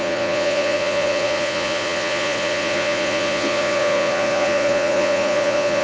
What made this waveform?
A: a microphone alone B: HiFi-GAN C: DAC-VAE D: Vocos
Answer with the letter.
D